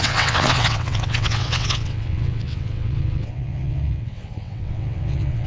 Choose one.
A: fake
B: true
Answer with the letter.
A